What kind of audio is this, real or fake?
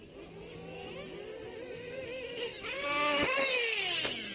real